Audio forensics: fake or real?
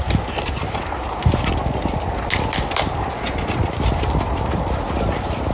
real